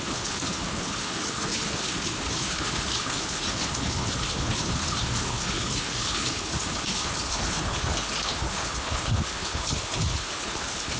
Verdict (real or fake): fake